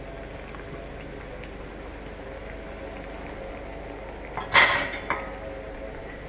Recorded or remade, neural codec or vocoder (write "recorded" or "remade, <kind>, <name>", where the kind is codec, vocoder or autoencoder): recorded